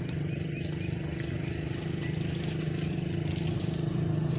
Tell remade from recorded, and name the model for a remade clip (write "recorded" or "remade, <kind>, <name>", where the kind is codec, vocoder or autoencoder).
recorded